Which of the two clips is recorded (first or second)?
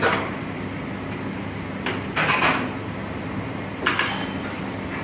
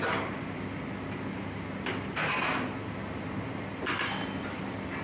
second